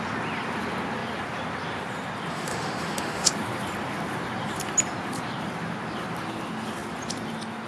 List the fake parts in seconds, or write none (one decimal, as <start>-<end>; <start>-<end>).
2.3-3.3